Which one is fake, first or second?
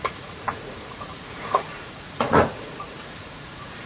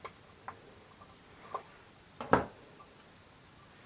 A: first